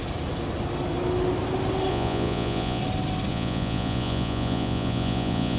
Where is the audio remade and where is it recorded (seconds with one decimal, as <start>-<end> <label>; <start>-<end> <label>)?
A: 0.0-1.9 recorded; 1.9-2.8 remade; 2.8-3.3 recorded; 3.3-5.6 remade